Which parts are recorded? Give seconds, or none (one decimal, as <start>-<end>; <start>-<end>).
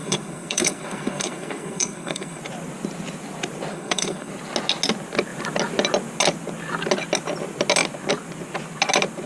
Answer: 2.4-3.7; 4.3-9.3